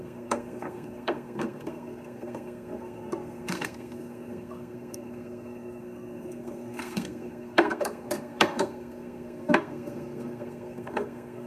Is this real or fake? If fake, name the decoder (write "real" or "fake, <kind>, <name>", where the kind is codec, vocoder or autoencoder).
fake, codec, SNAC